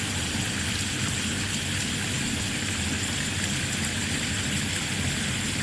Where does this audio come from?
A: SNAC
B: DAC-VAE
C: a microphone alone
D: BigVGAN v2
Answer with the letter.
D